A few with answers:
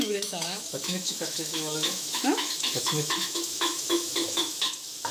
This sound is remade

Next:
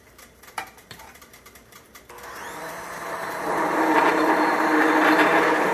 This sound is remade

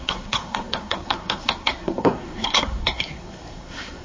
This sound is remade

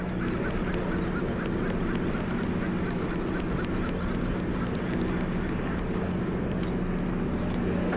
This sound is recorded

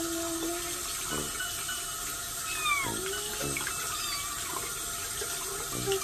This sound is recorded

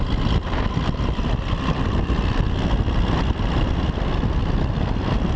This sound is recorded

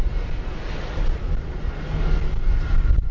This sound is recorded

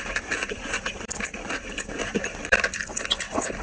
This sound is remade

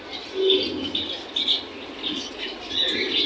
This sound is recorded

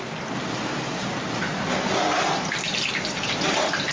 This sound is recorded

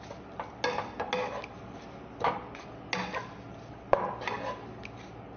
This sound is recorded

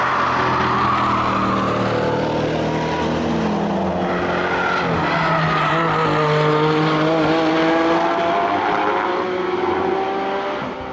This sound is recorded